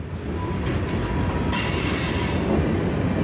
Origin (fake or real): real